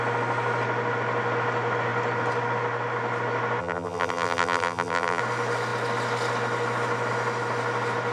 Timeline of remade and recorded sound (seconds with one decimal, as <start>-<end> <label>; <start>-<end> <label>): 0.0-3.6 recorded; 3.6-5.2 remade; 5.2-8.1 recorded